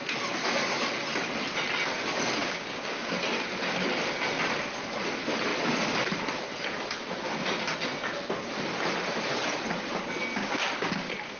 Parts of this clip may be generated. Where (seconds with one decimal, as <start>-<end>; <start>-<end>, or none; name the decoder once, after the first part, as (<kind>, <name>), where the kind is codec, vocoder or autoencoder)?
2.4-3.2 (codec, DAC); 10.4-11.4